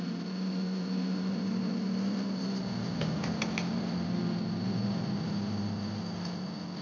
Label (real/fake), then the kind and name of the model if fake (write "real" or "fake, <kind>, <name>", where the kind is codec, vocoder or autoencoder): real